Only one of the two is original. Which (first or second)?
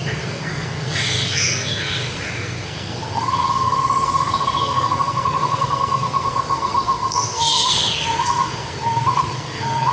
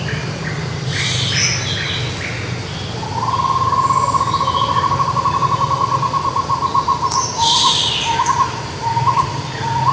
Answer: second